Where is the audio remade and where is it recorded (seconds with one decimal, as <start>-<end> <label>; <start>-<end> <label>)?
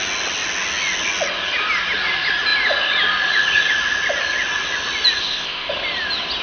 0.0-5.2 recorded; 5.2-5.7 remade; 5.7-6.4 recorded